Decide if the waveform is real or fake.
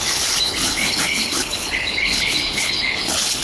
fake